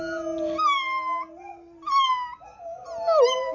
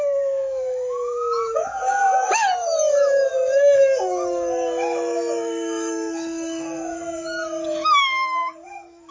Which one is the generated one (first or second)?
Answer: second